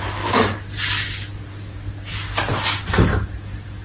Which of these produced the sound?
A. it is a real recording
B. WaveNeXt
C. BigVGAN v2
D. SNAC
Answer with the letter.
A